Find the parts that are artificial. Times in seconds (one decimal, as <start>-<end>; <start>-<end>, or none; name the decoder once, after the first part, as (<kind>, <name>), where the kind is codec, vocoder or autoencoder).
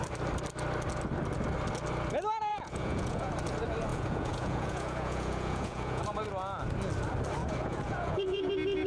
2.5-3.3 (vocoder, Vocos); 3.9-6.0; 7.4-8.5